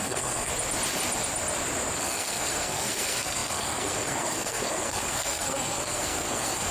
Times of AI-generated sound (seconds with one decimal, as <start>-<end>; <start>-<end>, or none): 0.0-0.5; 2.0-6.7